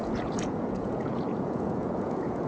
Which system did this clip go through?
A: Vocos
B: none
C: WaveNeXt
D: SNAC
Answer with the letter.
A